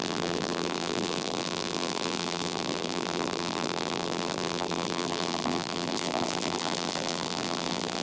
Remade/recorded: remade